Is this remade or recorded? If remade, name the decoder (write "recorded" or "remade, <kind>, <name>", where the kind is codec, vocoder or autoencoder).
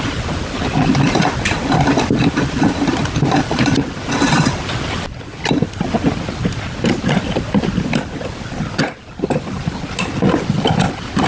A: recorded